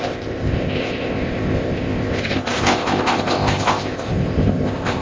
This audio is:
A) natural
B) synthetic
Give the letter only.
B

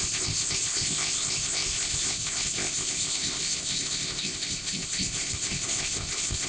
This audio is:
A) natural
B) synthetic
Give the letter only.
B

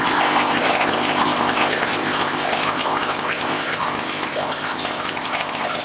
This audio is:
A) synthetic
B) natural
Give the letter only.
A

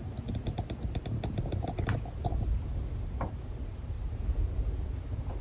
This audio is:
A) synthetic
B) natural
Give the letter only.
B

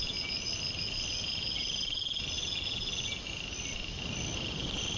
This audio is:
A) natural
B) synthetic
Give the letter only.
A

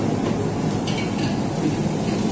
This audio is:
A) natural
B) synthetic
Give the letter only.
A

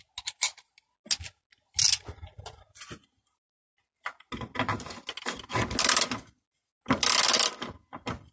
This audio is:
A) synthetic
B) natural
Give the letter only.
B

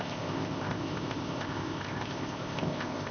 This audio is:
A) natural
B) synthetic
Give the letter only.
B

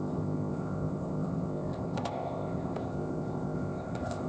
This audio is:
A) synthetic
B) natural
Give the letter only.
A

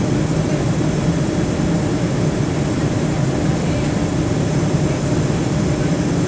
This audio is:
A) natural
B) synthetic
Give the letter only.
A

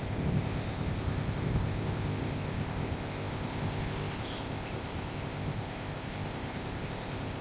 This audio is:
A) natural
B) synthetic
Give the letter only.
B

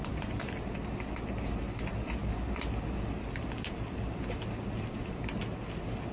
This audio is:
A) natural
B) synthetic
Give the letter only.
A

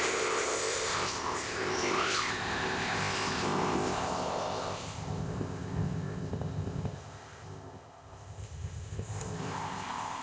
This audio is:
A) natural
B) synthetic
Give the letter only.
B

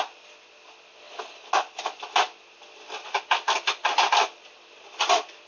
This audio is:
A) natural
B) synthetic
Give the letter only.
A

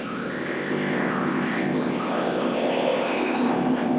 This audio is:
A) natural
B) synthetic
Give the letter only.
B